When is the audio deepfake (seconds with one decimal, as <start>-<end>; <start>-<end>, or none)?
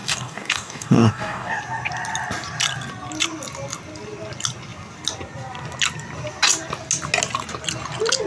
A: 0.0-1.6